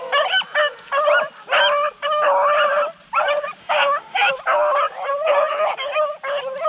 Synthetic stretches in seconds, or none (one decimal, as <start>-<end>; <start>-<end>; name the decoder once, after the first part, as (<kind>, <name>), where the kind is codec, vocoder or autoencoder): 3.6-4.3 (autoencoder, DAC-VAE)

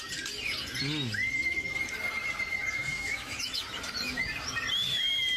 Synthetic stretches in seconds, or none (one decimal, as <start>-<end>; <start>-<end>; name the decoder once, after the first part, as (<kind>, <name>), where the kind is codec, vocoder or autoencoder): 2.8-3.6 (autoencoder, DAC-VAE)

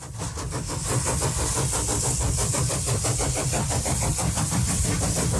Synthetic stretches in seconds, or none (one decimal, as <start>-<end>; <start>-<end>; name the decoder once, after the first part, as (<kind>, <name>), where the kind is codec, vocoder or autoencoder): none

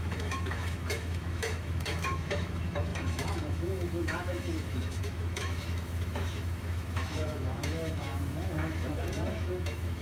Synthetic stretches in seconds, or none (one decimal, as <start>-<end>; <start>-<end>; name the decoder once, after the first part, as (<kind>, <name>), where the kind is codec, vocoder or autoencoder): 0.0-10.0 (autoencoder, DAC-VAE)

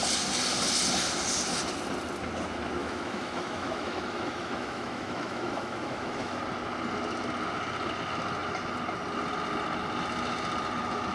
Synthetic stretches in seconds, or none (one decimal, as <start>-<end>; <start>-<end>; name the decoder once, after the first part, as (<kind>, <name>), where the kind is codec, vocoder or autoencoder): 2.8-6.4 (autoencoder, DAC-VAE)

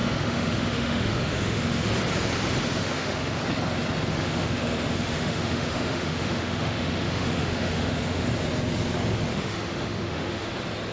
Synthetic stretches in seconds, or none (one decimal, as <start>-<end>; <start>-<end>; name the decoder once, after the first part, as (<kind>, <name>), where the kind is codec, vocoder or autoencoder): 0.0-1.9 (autoencoder, DAC-VAE); 2.8-3.4; 4.1-8.3; 9.3-10.5

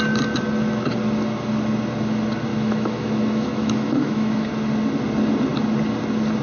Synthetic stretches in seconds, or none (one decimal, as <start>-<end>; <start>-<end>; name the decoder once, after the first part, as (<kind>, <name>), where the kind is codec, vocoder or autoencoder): 2.5-4.5 (autoencoder, DAC-VAE)

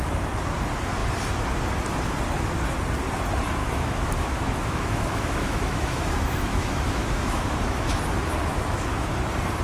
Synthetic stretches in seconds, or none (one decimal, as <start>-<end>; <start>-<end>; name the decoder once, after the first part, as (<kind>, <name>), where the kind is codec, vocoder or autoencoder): 3.6-8.0 (autoencoder, DAC-VAE); 8.4-9.1